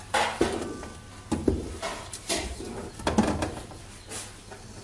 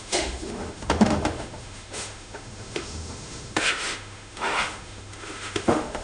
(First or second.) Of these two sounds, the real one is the first